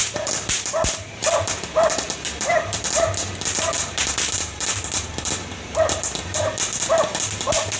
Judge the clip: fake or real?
fake